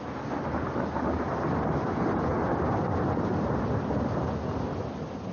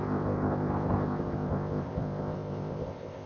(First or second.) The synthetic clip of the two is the second